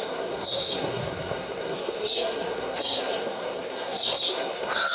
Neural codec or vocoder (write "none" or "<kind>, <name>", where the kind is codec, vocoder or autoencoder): codec, SNAC